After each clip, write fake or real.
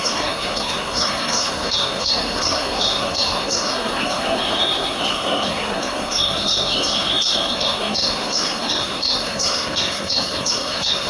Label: fake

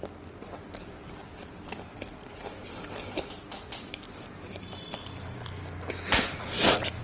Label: real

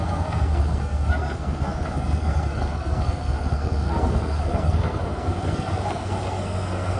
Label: fake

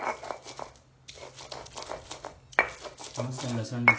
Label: real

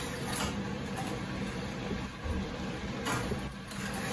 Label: real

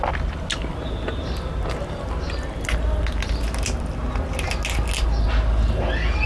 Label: real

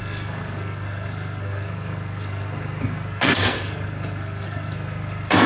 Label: fake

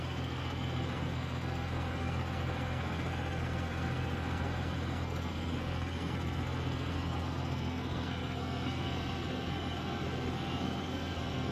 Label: fake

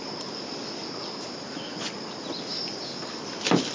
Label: real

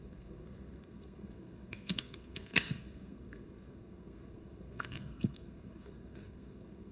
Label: fake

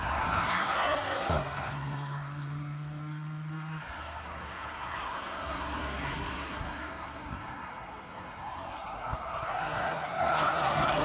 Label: fake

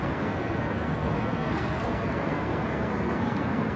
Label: fake